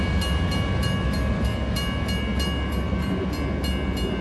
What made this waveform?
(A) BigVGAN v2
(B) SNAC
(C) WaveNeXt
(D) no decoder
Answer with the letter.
D